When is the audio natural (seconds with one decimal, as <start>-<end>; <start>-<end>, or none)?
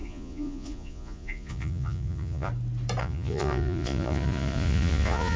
2.5-3.0